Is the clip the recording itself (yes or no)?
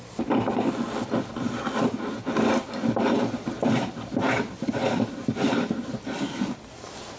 yes